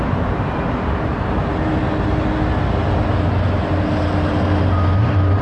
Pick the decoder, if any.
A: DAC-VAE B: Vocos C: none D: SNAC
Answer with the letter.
C